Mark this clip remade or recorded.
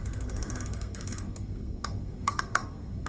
remade